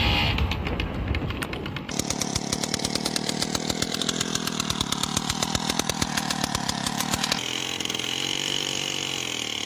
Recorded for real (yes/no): yes